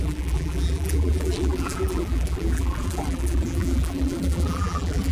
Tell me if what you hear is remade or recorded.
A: remade